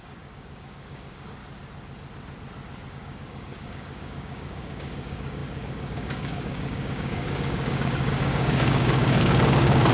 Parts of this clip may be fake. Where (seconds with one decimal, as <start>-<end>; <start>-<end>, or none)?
0.0-1.4; 2.9-9.9